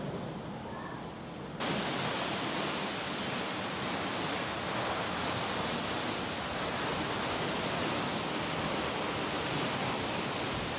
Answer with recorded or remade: recorded